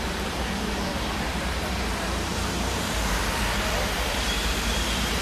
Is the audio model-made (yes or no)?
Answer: yes